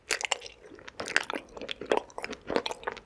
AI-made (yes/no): no